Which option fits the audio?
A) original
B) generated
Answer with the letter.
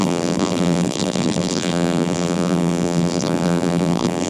B